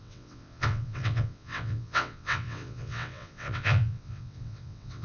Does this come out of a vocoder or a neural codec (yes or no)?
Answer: yes